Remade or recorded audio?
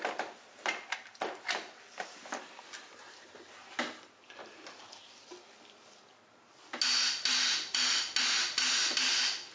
recorded